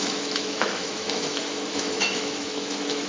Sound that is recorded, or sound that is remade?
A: remade